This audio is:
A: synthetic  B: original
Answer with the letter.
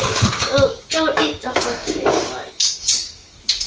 A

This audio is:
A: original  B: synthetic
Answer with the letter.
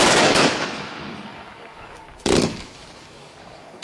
B